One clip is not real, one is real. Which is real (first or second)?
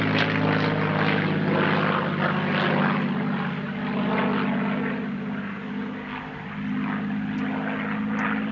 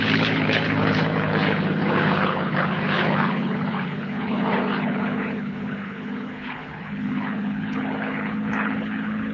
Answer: first